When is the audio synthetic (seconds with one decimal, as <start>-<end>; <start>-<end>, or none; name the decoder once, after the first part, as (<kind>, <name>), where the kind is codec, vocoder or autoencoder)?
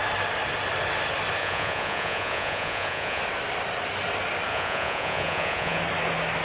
1.4-3.2 (vocoder, Vocos); 4.5-5.8